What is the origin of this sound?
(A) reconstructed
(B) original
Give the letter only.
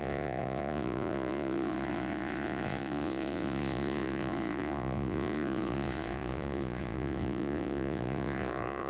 A